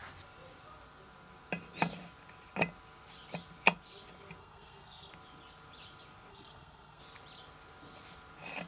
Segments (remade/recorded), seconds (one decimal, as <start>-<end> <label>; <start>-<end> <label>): 0.0-4.4 recorded; 4.4-5.1 remade; 5.1-6.3 recorded; 6.3-7.0 remade; 7.0-8.7 recorded